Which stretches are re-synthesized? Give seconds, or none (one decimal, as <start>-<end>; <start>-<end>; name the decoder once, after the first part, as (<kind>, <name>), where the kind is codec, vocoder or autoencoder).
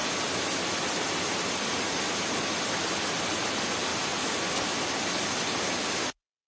none